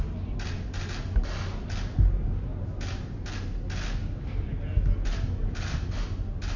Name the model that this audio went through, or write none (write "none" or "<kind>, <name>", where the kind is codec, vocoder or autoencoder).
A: none